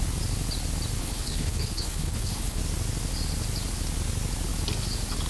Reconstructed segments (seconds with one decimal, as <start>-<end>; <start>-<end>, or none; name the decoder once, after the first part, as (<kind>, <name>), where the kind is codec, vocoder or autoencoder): 1.0-2.6 (codec, HILCodec)